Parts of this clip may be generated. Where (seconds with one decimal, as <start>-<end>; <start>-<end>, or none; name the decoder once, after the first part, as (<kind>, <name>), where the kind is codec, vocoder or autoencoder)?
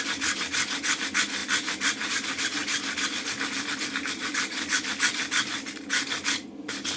none